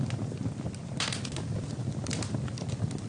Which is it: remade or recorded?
recorded